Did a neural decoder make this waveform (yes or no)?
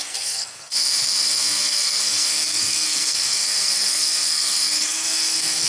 yes